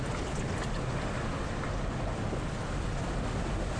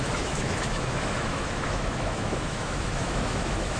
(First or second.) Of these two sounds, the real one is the first